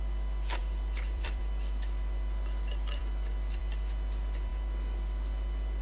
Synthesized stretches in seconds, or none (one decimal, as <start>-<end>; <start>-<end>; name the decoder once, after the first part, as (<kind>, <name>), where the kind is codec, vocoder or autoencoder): 0.6-1.4 (vocoder, BigVGAN v2)